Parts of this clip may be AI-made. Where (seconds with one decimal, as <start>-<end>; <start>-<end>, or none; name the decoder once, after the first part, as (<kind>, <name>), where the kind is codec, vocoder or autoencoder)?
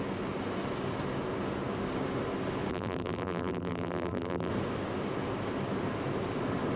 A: 2.7-4.5 (vocoder, BigVGAN v2)